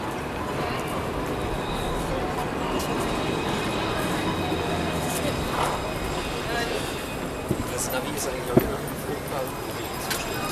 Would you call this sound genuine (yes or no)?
yes